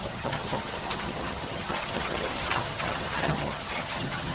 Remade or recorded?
remade